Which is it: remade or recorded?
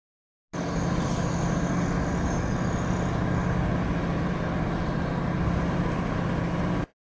recorded